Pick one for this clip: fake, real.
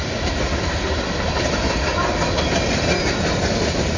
real